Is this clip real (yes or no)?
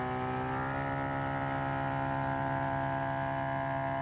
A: yes